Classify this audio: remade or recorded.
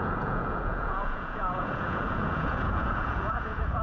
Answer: remade